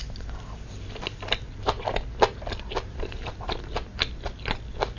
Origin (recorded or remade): recorded